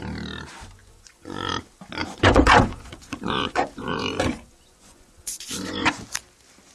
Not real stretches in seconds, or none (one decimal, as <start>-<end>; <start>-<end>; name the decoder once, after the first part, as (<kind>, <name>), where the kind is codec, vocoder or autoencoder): 0.8-1.5 (vocoder, Vocos); 2.0-6.0